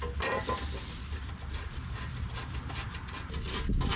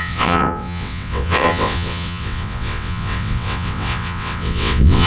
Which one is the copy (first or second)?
second